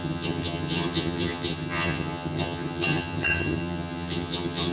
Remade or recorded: remade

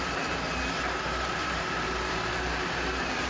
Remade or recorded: remade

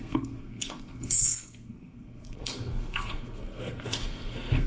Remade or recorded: remade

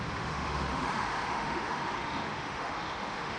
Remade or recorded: remade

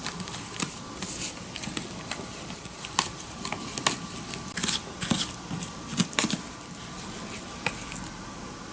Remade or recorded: recorded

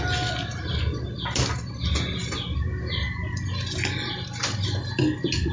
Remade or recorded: recorded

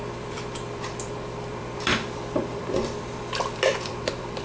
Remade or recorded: remade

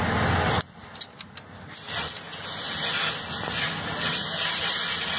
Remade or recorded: recorded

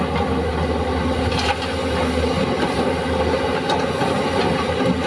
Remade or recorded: recorded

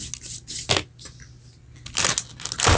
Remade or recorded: recorded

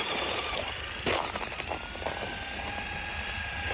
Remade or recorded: recorded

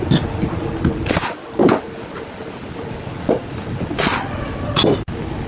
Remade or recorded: recorded